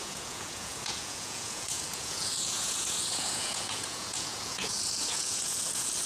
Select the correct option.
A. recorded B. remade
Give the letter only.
B